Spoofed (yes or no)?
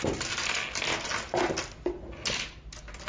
no